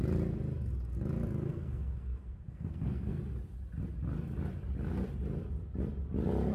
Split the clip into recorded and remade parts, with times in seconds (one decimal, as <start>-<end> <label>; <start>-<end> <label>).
0.0-1.5 recorded; 1.5-3.2 remade; 3.2-6.5 recorded